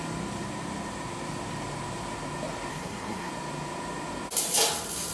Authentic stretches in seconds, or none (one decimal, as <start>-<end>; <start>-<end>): 0.0-2.7; 3.3-5.1